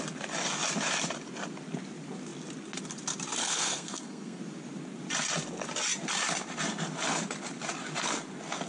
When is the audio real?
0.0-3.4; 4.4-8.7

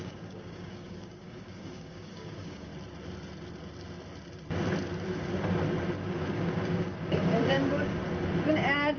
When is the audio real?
2.7-6.0; 8.0-9.0

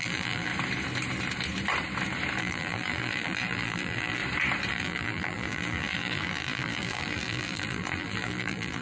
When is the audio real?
0.5-2.4; 4.2-4.7